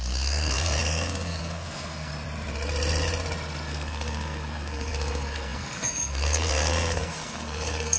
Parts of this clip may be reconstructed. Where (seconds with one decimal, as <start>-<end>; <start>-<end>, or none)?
0.0-2.1; 3.7-8.0